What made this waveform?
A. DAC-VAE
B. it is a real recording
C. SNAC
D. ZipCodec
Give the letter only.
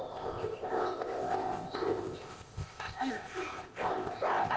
D